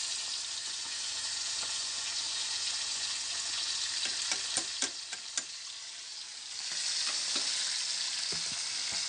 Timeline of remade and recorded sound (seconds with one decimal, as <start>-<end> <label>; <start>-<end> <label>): 0.0-0.6 recorded; 0.6-3.7 remade; 3.7-9.1 recorded